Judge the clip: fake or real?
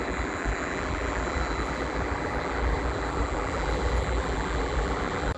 fake